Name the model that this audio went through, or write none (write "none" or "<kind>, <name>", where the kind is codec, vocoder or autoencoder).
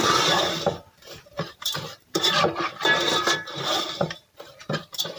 vocoder, BigVGAN v2